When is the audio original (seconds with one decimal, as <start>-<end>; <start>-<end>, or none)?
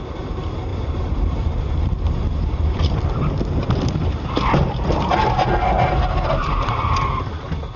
0.0-0.7; 5.3-6.3; 6.8-7.8